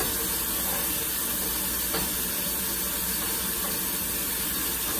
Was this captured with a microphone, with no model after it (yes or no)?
yes